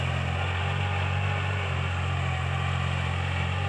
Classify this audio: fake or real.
real